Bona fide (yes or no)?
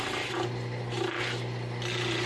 yes